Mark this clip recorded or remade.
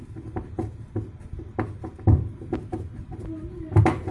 recorded